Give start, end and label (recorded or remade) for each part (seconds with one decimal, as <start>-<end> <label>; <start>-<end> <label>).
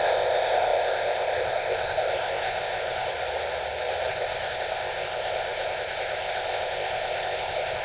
0.0-3.1 remade; 3.1-4.1 recorded; 4.1-7.8 remade